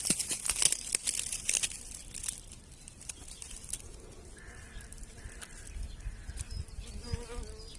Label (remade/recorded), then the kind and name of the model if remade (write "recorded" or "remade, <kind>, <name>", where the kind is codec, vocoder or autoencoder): recorded